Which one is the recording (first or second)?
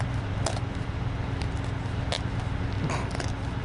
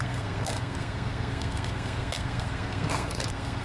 first